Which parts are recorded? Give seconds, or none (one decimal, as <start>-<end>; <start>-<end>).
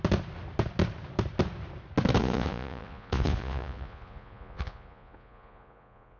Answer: 0.0-2.2